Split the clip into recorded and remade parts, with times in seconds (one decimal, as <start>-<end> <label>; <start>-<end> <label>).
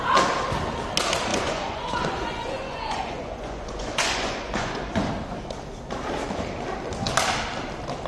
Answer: 0.0-1.3 recorded; 1.3-5.1 remade; 5.1-8.1 recorded